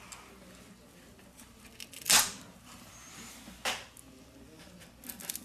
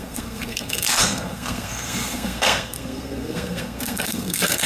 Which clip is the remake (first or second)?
second